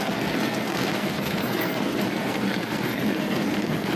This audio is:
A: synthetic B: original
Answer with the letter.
A